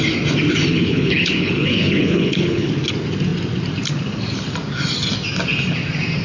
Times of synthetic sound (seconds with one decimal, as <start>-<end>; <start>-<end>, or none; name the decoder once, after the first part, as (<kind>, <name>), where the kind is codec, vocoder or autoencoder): 0.7-2.7 (codec, HILCodec)